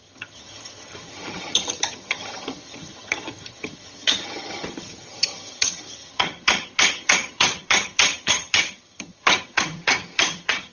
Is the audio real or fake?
fake